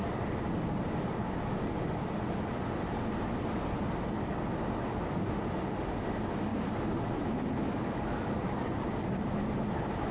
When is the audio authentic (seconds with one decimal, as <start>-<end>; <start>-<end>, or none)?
0.0-10.1